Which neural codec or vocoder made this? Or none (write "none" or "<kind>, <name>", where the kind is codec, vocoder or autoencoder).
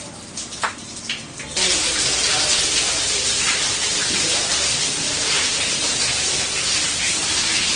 vocoder, BigVGAN v2